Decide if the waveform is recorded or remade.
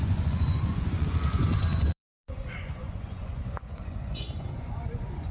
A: remade